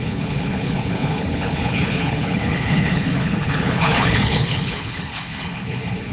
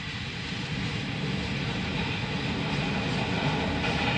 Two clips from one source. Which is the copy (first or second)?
first